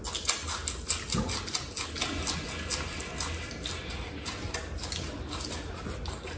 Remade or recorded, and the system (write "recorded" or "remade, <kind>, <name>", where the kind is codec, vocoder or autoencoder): recorded